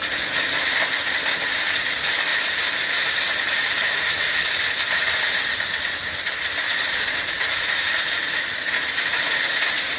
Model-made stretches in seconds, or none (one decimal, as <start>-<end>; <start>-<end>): none